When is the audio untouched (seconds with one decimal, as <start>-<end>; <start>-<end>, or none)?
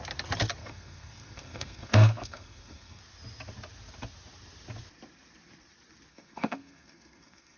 0.0-0.6; 3.0-6.1